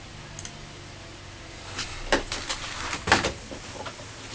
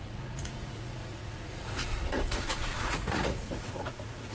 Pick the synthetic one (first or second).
second